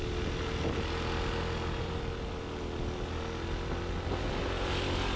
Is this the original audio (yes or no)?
yes